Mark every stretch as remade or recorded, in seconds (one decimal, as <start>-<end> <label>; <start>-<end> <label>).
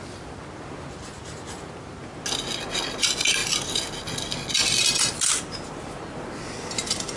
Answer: 0.0-7.2 recorded